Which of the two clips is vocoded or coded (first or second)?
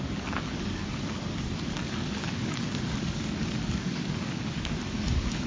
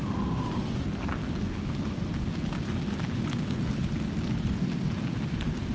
first